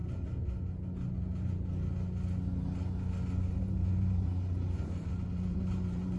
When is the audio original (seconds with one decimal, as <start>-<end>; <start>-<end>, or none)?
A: 0.0-3.6